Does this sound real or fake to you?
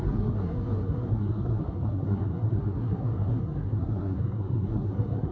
fake